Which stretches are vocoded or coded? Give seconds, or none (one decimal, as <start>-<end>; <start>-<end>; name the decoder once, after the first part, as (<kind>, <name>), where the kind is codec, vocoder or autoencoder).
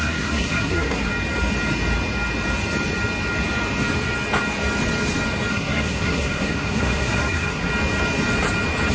0.0-1.1 (codec, SNAC); 5.5-7.7